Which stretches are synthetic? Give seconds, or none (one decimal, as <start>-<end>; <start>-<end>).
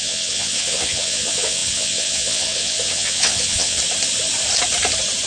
0.0-3.8